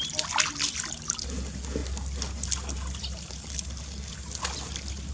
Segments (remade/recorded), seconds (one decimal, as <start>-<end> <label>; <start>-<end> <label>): 0.0-5.1 recorded